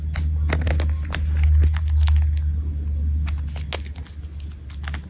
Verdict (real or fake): real